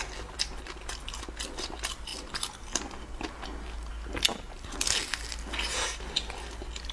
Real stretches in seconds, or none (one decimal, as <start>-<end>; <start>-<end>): 0.0-6.9